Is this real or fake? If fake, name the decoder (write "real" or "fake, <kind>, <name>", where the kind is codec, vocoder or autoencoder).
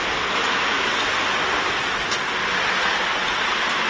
real